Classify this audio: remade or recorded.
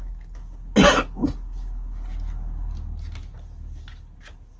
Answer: recorded